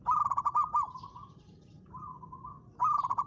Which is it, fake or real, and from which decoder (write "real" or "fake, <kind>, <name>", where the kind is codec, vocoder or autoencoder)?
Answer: real